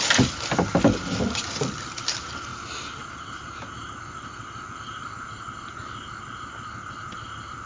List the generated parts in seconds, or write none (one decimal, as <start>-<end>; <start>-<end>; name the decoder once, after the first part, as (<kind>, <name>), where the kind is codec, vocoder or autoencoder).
none